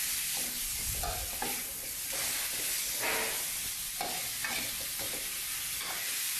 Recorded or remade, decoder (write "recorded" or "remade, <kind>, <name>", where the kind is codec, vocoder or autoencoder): recorded